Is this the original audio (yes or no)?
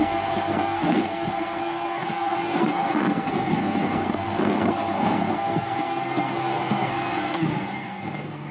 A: no